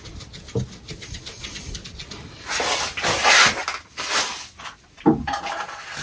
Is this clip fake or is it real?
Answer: real